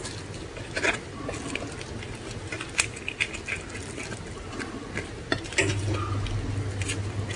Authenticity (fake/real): real